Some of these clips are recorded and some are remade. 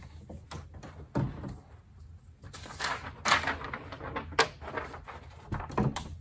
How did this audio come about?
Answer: recorded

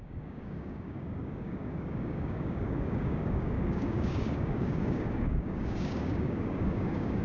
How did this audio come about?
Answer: remade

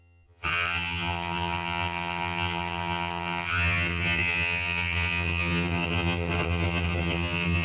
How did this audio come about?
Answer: remade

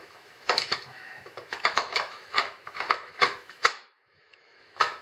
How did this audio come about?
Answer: remade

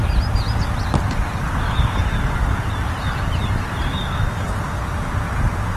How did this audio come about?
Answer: recorded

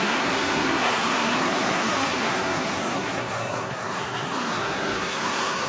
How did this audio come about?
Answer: remade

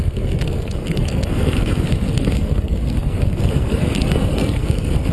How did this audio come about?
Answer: remade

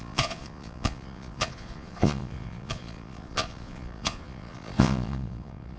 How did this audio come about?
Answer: remade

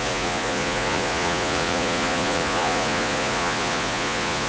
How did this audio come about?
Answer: remade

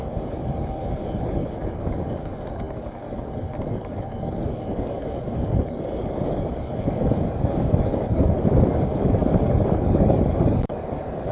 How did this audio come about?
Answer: remade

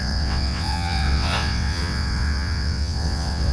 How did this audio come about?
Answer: remade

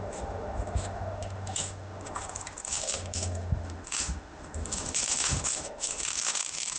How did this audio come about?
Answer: remade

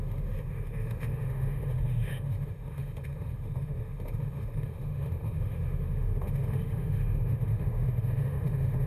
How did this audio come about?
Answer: remade